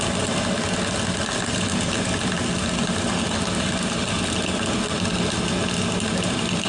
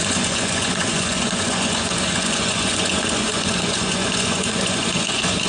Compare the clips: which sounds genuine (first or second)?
first